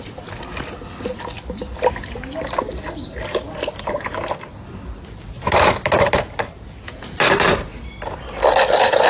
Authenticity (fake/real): real